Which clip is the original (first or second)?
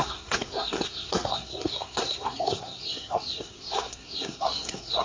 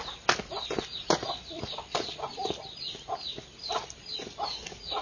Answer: second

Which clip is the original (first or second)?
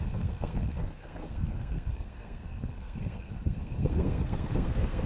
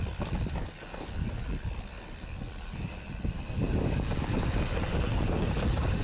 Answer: second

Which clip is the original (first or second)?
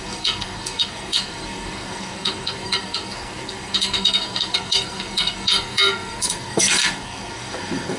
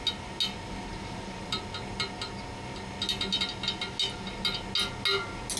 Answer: second